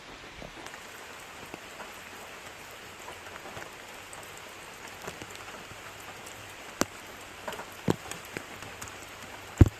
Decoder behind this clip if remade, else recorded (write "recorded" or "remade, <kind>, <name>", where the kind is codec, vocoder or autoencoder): recorded